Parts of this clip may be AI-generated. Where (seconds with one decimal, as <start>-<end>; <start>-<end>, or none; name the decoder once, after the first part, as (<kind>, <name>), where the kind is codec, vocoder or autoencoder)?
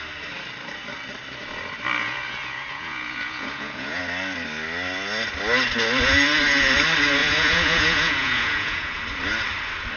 2.0-4.0 (vocoder, Vocos); 7.2-9.0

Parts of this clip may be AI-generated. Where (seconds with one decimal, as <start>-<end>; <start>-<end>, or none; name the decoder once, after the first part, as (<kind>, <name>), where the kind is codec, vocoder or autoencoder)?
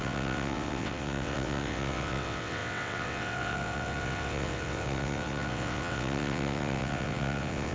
0.0-7.7 (vocoder, WaveNeXt)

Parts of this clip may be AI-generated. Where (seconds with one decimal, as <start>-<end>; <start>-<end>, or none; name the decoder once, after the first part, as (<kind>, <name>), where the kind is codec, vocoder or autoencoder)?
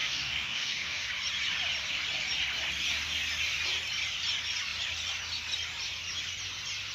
0.0-1.1 (codec, DAC)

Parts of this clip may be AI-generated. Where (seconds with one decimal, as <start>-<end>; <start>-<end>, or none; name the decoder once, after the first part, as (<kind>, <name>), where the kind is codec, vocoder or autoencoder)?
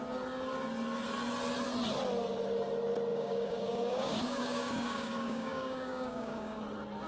3.1-6.6 (codec, DAC)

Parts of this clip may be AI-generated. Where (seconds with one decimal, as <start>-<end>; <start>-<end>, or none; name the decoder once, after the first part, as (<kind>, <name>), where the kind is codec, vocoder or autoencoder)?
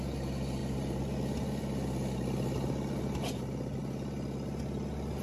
none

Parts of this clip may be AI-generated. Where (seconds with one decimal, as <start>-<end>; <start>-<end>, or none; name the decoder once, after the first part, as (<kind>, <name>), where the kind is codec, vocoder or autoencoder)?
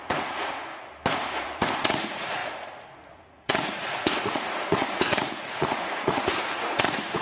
0.0-0.7 (vocoder, Vocos); 1.4-7.2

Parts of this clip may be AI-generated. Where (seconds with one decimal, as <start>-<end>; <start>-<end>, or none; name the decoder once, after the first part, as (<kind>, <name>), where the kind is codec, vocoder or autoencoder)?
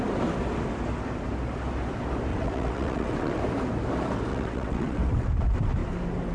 2.3-3.4 (vocoder, WaveNeXt); 4.3-5.3